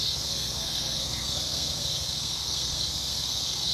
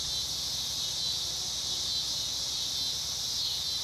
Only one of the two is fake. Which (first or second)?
first